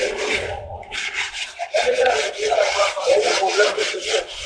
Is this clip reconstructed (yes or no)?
yes